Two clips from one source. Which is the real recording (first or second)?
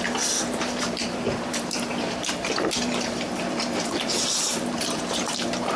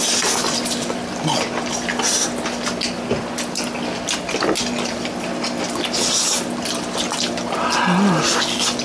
second